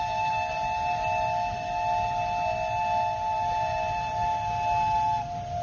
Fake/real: real